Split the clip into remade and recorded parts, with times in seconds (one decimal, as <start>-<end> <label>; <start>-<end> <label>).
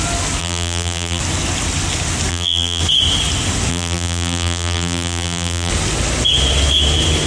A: 0.0-0.4 recorded; 0.4-1.2 remade; 1.2-2.3 recorded; 2.3-2.8 remade; 2.8-3.7 recorded; 3.7-5.7 remade; 5.7-7.3 recorded